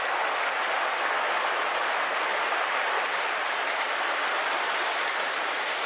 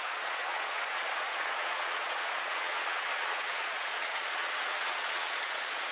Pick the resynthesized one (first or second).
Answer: second